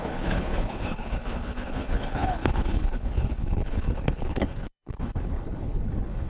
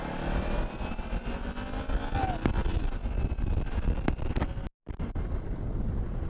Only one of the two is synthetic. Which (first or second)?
first